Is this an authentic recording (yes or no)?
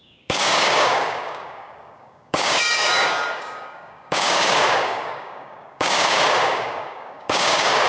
no